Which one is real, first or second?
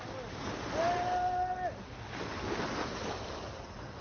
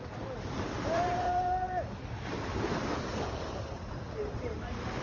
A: first